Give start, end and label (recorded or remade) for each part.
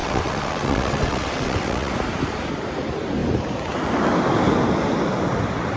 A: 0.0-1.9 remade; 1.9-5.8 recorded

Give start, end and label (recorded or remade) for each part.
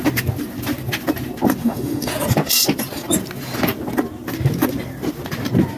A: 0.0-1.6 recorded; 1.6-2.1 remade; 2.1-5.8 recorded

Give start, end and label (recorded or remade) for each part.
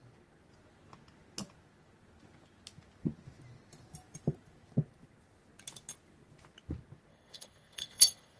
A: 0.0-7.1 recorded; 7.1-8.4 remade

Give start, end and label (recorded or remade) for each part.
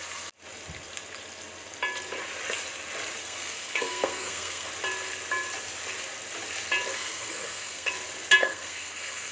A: 0.0-3.2 recorded; 3.2-4.7 remade; 4.7-6.9 recorded; 6.9-7.9 remade; 7.9-8.4 recorded; 8.4-9.3 remade